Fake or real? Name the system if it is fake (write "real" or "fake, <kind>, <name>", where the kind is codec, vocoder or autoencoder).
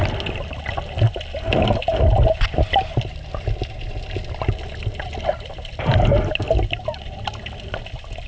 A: real